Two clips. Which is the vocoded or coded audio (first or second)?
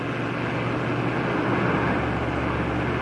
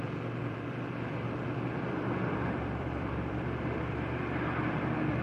second